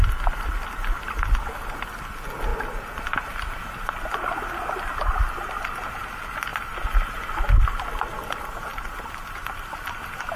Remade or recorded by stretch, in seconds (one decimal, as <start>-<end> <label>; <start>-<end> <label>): 0.0-8.7 recorded; 8.7-9.9 remade; 9.9-10.4 recorded

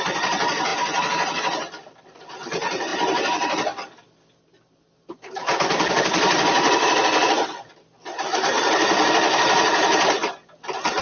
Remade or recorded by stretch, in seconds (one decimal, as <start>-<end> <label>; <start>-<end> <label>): 0.0-11.0 recorded

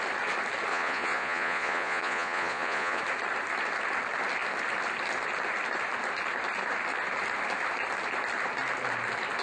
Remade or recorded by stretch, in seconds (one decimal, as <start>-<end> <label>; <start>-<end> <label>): 0.0-0.7 recorded; 0.7-3.0 remade; 3.0-9.4 recorded

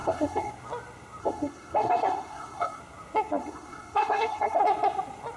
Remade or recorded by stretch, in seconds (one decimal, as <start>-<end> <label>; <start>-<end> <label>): 0.0-0.5 remade; 0.5-1.2 recorded; 1.2-2.8 remade; 2.8-3.4 recorded; 3.4-4.6 remade; 4.6-5.4 recorded

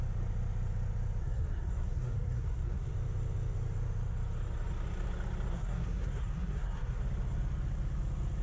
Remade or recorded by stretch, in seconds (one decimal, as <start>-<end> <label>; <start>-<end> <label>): 0.0-1.2 recorded; 1.2-2.9 remade; 2.9-5.5 recorded; 5.5-7.0 remade; 7.0-8.4 recorded

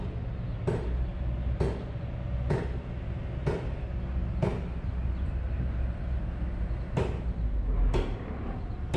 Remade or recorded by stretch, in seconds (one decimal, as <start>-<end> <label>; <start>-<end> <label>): 0.0-9.0 recorded

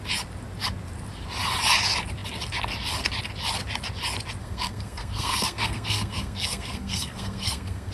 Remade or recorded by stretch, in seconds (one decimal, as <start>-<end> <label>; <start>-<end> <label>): 0.0-4.4 recorded; 4.4-7.9 remade